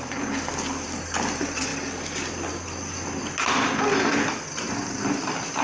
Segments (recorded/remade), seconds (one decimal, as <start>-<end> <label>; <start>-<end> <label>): 0.0-5.6 recorded

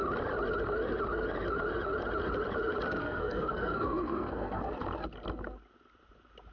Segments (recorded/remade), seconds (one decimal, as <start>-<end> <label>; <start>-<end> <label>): 0.0-3.0 recorded; 3.0-4.7 remade; 4.7-6.5 recorded

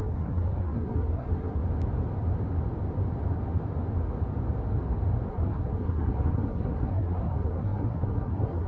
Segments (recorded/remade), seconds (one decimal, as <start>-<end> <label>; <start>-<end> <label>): 0.0-1.6 remade; 1.6-5.3 recorded; 5.3-8.7 remade

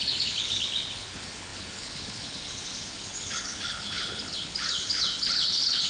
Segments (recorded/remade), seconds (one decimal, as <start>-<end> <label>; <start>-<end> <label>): 0.0-5.9 remade

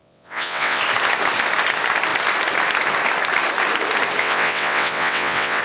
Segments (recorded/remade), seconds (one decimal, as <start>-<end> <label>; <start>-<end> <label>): 0.0-0.8 remade; 0.8-4.2 recorded; 4.2-5.6 remade

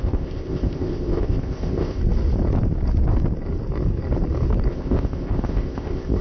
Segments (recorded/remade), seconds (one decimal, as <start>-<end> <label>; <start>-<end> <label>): 0.0-2.0 remade; 2.0-4.7 recorded; 4.7-6.2 remade

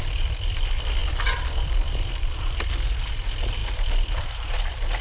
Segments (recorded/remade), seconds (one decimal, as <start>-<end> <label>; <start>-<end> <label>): 0.0-5.0 remade

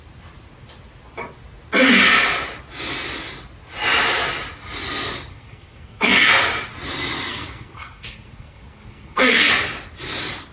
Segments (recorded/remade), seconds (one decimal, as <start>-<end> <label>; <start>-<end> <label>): 0.0-5.3 recorded; 5.3-6.3 remade; 6.3-7.3 recorded; 7.3-9.5 remade; 9.5-10.5 recorded